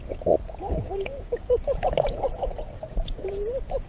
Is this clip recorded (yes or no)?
no